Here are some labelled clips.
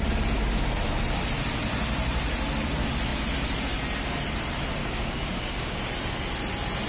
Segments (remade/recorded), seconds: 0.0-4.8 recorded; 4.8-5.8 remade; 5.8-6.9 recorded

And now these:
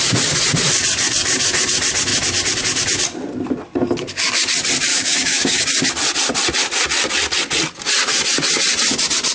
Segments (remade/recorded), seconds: 0.0-4.9 recorded; 4.9-5.7 remade; 5.7-9.3 recorded

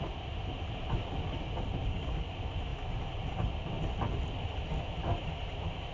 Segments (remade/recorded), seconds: 0.0-1.8 recorded; 1.8-2.3 remade; 2.3-5.9 recorded

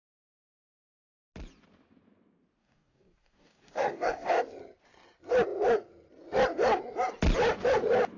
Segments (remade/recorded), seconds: 0.0-2.6 recorded; 2.6-4.4 remade; 4.4-8.2 recorded

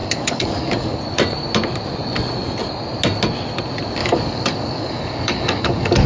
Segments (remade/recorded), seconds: 0.0-1.0 remade; 1.0-4.0 recorded; 4.0-6.1 remade

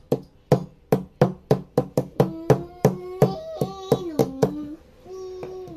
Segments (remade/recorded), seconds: 0.0-4.2 recorded; 4.2-4.8 remade; 4.8-5.8 recorded

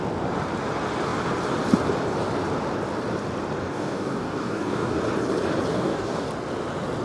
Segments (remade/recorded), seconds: 0.0-3.6 recorded; 3.6-5.0 remade; 5.0-5.7 recorded; 5.7-6.3 remade; 6.3-7.0 recorded